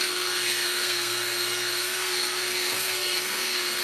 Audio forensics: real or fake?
fake